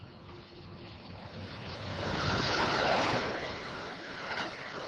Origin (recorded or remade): remade